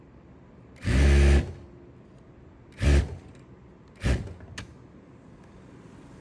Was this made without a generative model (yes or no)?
yes